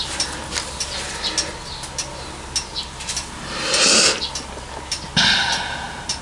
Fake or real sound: real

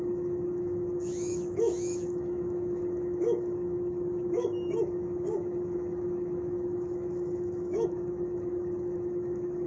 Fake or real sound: fake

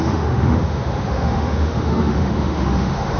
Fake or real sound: fake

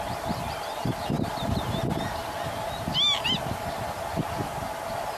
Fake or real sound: real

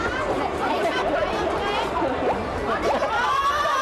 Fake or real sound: real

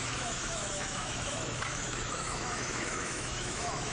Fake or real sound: fake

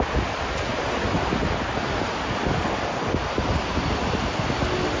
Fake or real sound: real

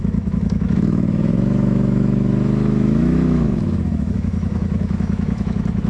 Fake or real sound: fake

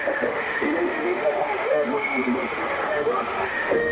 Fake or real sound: fake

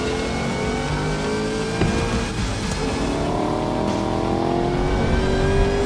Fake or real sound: real